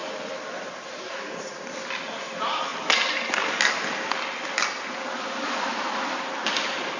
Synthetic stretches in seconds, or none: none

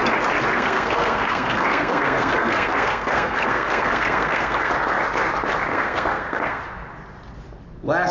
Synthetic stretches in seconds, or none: 0.5-4.7 (codec, SNAC); 5.7-6.6